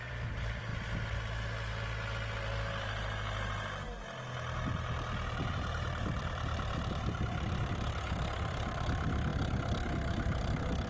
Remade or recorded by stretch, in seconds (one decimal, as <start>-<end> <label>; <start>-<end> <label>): 0.0-0.7 remade; 0.7-5.5 recorded; 5.5-9.3 remade; 9.3-9.9 recorded; 9.9-10.9 remade